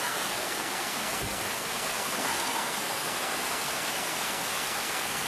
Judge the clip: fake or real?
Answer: fake